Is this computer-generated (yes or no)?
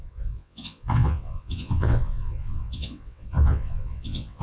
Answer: yes